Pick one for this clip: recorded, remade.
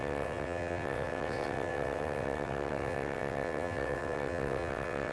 remade